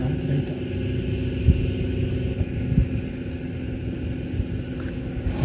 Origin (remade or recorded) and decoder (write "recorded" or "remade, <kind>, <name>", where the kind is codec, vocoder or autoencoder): recorded